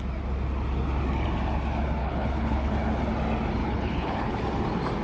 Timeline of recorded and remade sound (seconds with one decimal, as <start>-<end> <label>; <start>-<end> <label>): 0.0-2.0 recorded; 2.0-2.7 remade; 2.7-3.6 recorded; 3.6-4.4 remade; 4.4-5.0 recorded